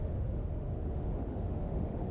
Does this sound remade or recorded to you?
remade